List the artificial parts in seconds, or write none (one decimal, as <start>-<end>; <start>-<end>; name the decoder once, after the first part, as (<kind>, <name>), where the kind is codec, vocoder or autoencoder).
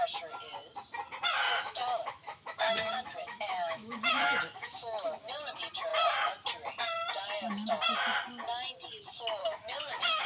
1.5-5.3 (autoencoder, DAC-VAE); 9.4-10.3